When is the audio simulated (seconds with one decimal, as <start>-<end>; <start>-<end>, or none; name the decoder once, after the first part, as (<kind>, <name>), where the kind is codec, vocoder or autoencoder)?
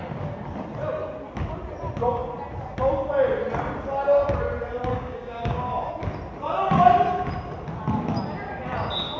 4.9-5.9 (codec, DAC)